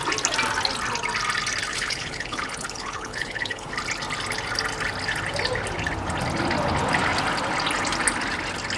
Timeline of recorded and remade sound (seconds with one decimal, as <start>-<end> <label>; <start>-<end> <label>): 0.0-1.7 recorded; 1.7-3.7 remade; 3.7-8.8 recorded